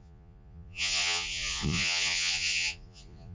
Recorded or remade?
remade